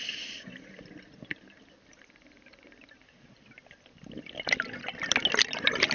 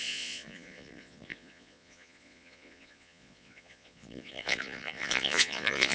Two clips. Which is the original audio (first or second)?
first